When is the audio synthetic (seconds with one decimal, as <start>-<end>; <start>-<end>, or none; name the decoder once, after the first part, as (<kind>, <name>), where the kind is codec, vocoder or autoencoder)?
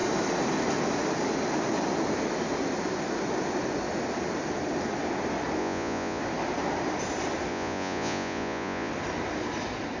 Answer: 5.6-6.2 (vocoder, Vocos); 7.5-8.9